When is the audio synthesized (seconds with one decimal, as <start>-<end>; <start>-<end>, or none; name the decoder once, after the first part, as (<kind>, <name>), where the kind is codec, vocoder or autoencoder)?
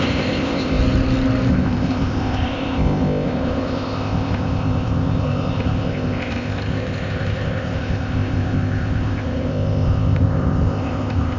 0.0-0.8 (codec, ZipCodec); 1.5-11.4